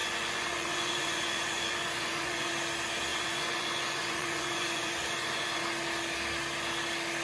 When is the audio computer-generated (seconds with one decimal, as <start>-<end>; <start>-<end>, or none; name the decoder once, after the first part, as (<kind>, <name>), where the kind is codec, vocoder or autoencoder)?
0.0-2.5 (vocoder, Vocos); 3.1-5.6